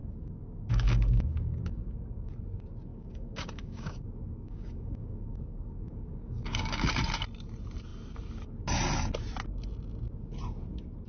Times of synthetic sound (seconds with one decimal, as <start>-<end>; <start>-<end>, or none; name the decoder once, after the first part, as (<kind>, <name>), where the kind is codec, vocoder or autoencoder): 0.0-2.3 (codec, DAC); 2.9-6.9